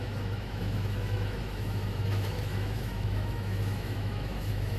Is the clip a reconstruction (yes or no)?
yes